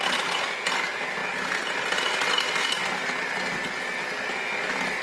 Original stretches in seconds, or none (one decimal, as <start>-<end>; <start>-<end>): 0.0-5.0